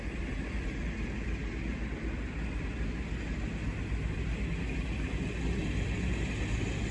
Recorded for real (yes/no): yes